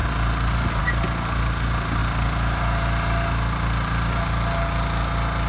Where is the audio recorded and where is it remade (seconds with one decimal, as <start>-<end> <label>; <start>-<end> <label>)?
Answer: 0.0-5.5 recorded